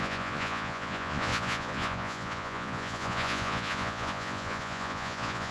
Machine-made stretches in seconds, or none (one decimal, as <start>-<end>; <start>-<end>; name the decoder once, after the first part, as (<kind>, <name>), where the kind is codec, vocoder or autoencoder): 0.0-5.5 (vocoder, Vocos)